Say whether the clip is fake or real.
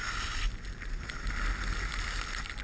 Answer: real